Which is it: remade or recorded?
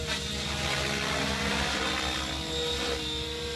recorded